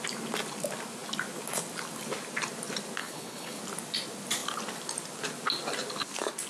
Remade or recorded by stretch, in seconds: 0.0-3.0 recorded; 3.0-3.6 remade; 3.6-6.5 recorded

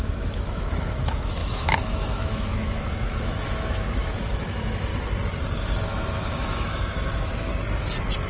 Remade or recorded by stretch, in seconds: 0.0-4.9 remade; 4.9-5.8 recorded; 5.8-7.5 remade; 7.5-8.3 recorded

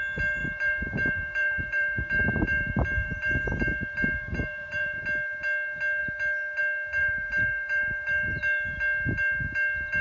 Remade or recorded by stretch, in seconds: 0.0-0.4 recorded; 0.4-5.0 remade; 5.0-7.0 recorded; 7.0-8.4 remade; 8.4-10.0 recorded

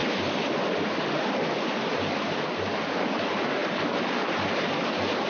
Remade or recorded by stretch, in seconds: 0.0-5.3 recorded

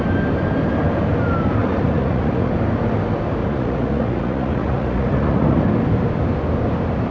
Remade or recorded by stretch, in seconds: 0.0-1.6 recorded; 1.6-2.5 remade; 2.5-3.4 recorded; 3.4-5.6 remade; 5.6-7.1 recorded

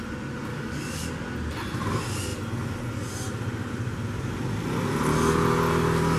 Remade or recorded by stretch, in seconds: 0.0-0.5 recorded; 0.5-1.1 remade; 1.1-6.2 recorded